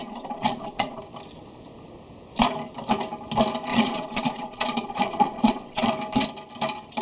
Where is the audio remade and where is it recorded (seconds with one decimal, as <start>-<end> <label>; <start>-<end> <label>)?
0.0-1.0 remade; 1.0-3.7 recorded; 3.7-5.9 remade; 5.9-7.0 recorded